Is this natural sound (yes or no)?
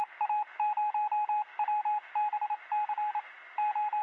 yes